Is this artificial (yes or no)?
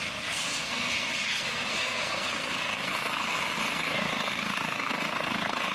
yes